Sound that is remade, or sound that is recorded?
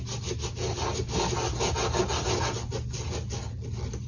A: recorded